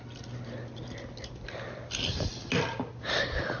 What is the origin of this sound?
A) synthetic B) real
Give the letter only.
B